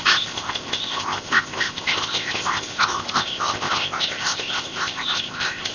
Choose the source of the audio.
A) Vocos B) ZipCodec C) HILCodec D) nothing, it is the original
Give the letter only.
B